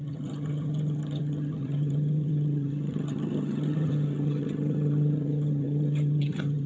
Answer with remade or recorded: remade